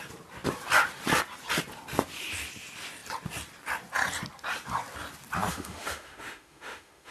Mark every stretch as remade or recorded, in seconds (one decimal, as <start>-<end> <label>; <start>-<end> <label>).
0.0-5.5 recorded; 5.5-7.1 remade